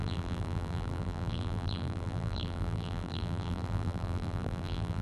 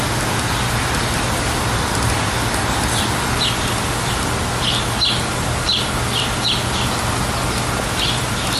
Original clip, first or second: second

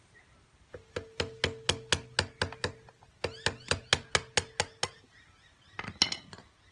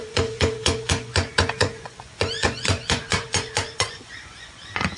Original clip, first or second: first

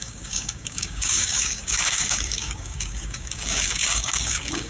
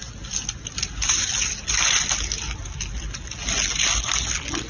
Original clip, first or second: second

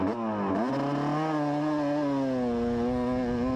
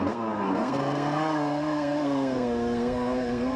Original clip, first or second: first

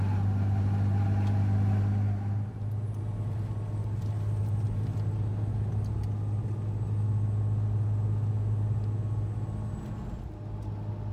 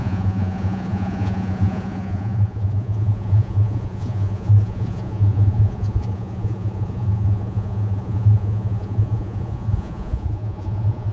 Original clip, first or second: first